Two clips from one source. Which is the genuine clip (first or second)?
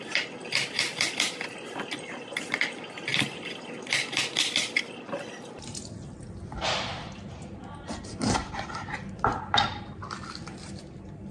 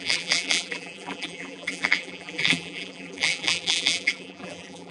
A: first